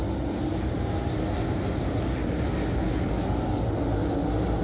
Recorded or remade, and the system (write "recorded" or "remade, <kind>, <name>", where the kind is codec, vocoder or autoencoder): recorded